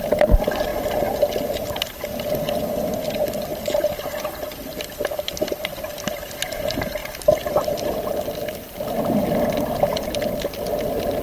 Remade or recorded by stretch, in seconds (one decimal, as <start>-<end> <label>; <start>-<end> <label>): 0.0-0.7 remade; 0.7-2.7 recorded; 2.7-3.5 remade; 3.5-4.5 recorded; 4.5-11.2 remade